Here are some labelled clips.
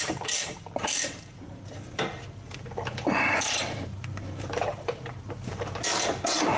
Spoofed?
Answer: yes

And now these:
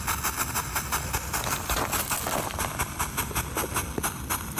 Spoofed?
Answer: no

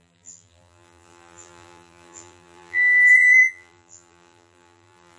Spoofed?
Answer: yes